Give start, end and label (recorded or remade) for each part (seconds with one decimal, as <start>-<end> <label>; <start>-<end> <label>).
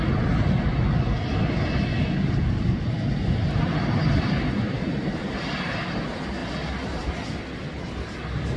0.0-1.9 recorded; 1.9-6.0 remade; 6.0-8.6 recorded